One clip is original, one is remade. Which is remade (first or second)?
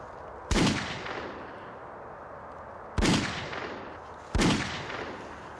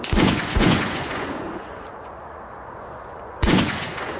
second